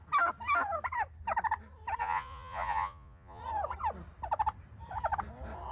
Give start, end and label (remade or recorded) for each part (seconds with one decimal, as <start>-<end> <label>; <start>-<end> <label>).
0.0-2.0 recorded; 2.0-3.4 remade; 3.4-5.7 recorded